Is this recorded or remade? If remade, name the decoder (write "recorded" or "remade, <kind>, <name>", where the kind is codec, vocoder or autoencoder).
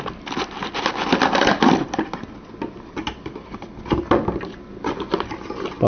recorded